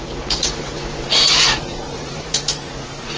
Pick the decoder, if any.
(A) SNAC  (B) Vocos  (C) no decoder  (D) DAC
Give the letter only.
B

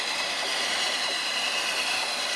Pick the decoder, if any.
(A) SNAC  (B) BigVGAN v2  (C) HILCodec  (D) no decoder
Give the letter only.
D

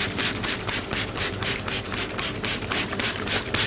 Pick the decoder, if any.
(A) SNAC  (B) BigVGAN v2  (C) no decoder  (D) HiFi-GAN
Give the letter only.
B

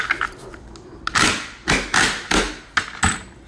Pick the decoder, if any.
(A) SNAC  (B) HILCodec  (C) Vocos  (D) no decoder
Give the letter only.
D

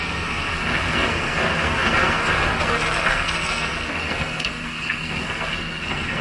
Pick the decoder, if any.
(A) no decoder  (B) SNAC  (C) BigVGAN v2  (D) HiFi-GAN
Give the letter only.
B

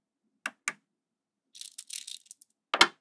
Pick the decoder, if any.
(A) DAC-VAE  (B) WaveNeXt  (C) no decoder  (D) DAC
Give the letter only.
C